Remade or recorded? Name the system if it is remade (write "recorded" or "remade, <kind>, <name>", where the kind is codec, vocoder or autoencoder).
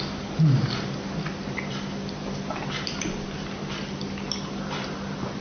recorded